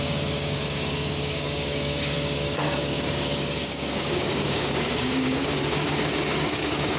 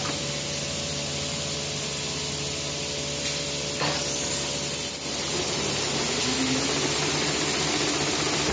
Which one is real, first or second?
second